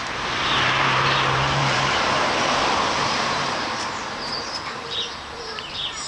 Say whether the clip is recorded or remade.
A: remade